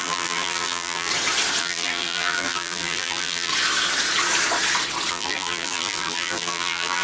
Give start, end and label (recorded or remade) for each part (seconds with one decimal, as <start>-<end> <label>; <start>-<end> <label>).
0.0-1.1 remade; 1.1-1.6 recorded; 1.6-3.5 remade; 3.5-5.1 recorded; 5.1-7.0 remade